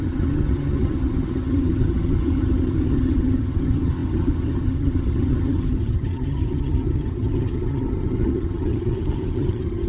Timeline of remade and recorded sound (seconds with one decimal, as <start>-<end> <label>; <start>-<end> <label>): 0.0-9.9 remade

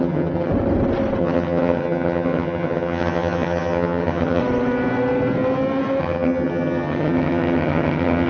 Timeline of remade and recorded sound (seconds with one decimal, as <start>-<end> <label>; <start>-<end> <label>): 0.0-0.5 remade; 0.5-1.2 recorded; 1.2-4.4 remade; 4.4-6.0 recorded; 6.0-8.3 remade

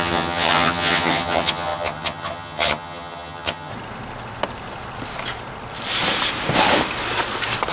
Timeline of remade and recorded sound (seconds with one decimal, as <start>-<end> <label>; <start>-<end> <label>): 0.0-3.7 remade; 3.7-7.7 recorded

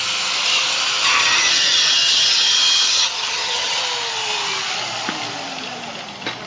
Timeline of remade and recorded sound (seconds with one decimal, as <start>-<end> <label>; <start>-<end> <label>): 0.0-1.1 recorded; 1.1-3.8 remade; 3.8-6.5 recorded

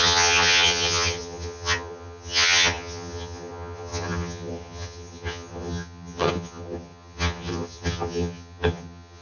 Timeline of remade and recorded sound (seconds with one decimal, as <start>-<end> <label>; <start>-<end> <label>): 0.0-9.2 remade

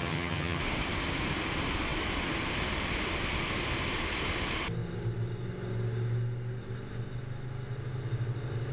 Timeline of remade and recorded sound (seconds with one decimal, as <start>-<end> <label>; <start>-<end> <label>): 0.0-0.6 remade; 0.6-8.7 recorded